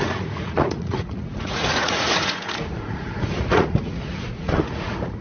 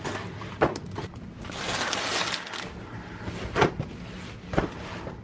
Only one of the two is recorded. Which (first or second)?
second